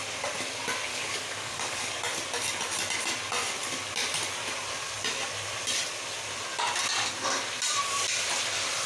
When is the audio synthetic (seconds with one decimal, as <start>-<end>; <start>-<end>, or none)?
0.9-2.0